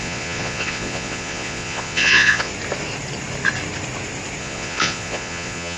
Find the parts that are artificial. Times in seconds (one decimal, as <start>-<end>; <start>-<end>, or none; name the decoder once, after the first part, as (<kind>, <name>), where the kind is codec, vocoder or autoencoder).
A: 0.0-2.5 (vocoder, Vocos); 4.4-5.8